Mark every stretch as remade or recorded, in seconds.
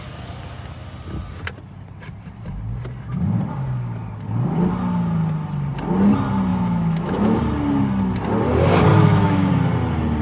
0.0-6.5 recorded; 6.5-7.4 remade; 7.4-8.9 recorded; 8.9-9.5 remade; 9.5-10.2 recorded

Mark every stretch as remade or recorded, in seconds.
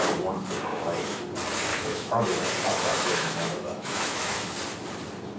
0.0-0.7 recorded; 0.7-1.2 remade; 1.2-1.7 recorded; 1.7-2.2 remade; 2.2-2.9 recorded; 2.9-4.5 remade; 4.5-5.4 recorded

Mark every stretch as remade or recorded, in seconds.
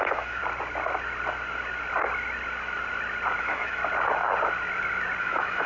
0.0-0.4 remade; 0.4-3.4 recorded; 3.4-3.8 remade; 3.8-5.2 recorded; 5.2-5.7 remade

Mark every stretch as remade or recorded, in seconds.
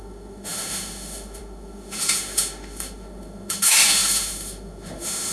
0.0-5.3 remade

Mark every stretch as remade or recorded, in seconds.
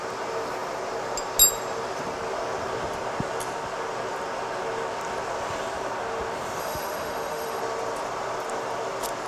0.0-6.6 recorded; 6.6-7.6 remade; 7.6-9.3 recorded